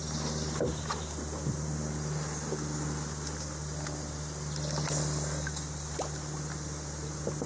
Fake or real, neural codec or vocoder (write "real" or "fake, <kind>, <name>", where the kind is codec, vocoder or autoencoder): real